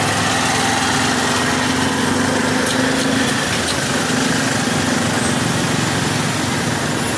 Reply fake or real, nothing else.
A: real